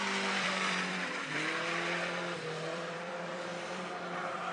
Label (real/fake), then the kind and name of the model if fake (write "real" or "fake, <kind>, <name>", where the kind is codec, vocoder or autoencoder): fake, vocoder, BigVGAN v2